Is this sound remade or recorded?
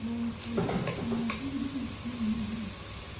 recorded